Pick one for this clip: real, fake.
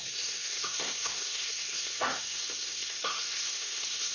fake